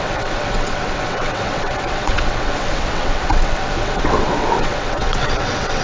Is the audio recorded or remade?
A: remade